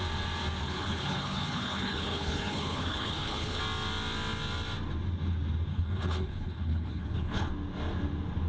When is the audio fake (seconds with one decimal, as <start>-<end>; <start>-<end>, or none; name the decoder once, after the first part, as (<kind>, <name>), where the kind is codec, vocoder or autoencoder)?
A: 0.6-3.6 (codec, HILCodec); 5.7-7.5

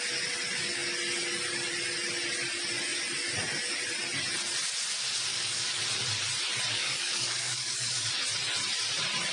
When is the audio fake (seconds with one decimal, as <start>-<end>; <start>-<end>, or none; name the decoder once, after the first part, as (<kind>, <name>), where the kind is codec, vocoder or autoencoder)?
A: 5.3-5.8 (codec, DAC); 6.7-8.1

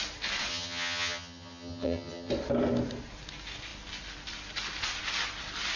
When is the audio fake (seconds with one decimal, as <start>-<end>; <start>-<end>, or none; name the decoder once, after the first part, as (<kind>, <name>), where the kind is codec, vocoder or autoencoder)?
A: 0.5-2.3 (vocoder, HiFi-GAN)

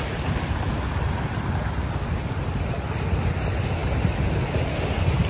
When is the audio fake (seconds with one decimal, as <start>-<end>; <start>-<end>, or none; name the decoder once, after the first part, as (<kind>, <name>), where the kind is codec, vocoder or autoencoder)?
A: none

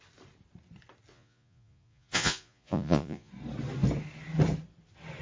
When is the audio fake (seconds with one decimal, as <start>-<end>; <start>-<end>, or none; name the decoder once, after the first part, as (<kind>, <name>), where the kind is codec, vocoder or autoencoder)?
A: 1.1-3.3 (vocoder, Vocos)